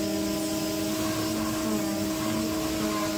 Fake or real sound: real